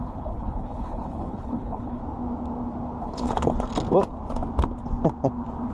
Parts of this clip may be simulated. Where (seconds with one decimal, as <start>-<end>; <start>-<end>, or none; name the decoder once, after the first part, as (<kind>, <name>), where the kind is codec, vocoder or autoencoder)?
0.0-2.0 (codec, HILCodec); 3.0-3.5